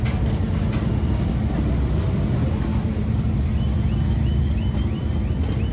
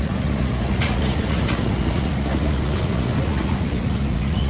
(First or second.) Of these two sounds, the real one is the first